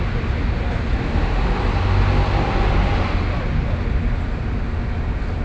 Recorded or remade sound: recorded